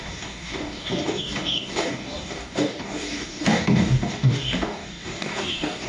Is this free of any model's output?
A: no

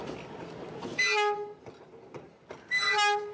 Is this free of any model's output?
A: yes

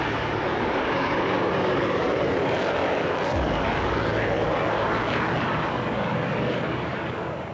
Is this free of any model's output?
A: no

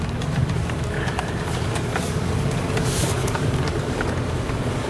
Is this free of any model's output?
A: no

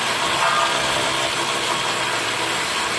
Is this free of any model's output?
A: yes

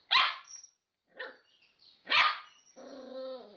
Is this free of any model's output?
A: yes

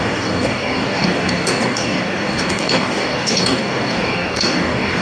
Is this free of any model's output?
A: no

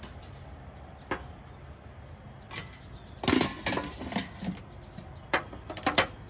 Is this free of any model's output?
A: yes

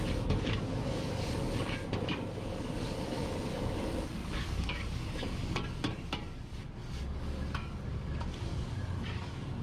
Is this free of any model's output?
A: no